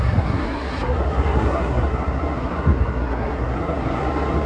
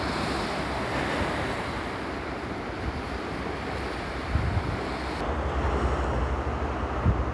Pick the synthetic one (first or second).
first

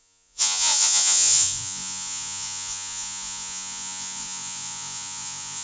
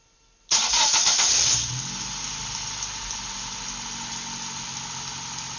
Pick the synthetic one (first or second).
first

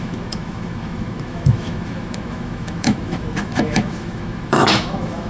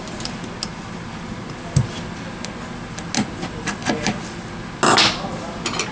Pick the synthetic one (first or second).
first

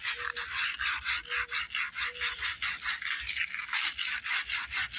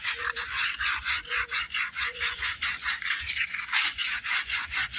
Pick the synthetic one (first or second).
second